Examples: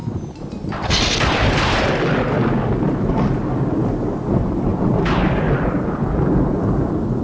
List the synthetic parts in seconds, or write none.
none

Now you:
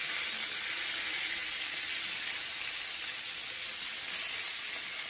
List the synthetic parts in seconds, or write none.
none

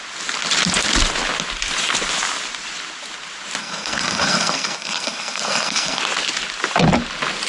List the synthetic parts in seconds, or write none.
3.6-6.0 (codec, SNAC)

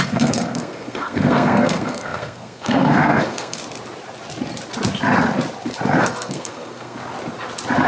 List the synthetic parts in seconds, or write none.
0.0-3.6 (codec, SNAC); 6.0-7.0

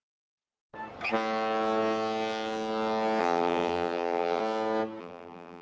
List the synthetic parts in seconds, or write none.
0.0-0.6 (vocoder, BigVGAN v2); 3.2-4.4; 5.0-5.6

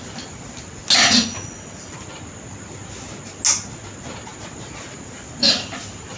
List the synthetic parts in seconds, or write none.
none

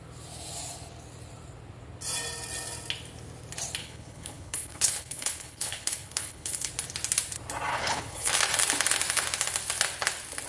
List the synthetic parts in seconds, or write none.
3.8-6.7 (codec, HILCodec); 7.7-8.3

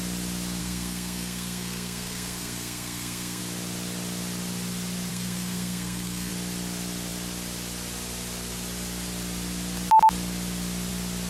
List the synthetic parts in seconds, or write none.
0.6-3.4 (codec, SNAC); 5.1-6.3